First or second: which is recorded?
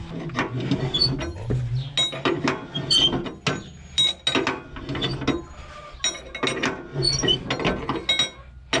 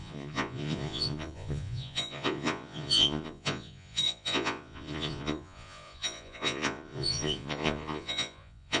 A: first